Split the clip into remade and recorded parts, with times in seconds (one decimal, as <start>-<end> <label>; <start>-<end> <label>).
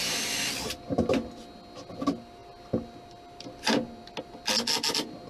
0.0-5.3 recorded